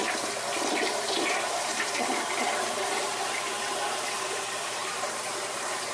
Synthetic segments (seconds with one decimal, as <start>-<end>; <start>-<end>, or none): 0.7-5.9